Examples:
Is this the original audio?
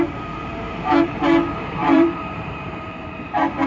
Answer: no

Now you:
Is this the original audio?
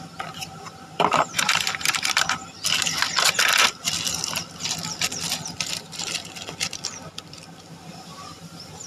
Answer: no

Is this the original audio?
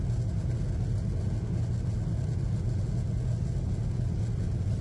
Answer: yes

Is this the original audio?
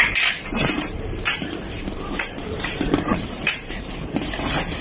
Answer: no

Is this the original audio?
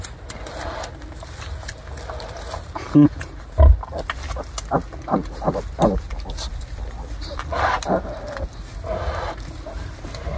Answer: yes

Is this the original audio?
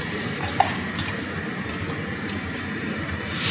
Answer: no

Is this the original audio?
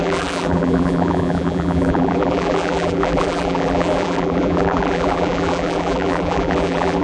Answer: no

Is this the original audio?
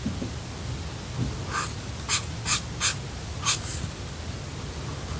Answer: yes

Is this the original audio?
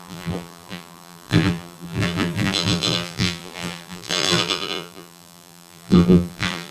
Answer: no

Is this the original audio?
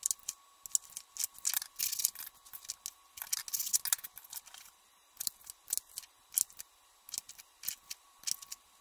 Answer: yes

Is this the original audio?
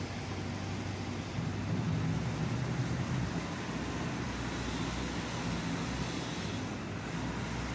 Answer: yes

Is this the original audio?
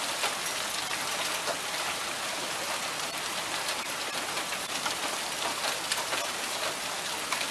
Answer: yes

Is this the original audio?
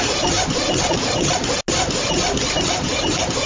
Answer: yes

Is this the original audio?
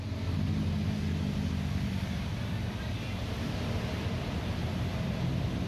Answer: yes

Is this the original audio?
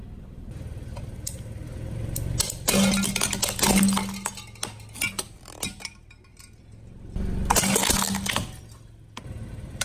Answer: yes